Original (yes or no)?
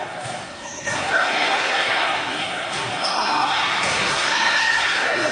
no